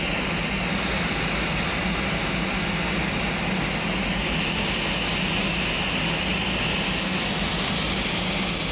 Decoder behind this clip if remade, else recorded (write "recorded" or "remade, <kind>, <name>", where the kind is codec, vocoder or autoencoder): recorded